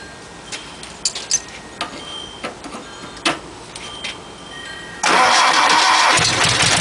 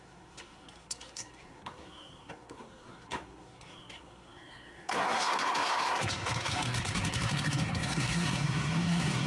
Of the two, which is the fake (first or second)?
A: second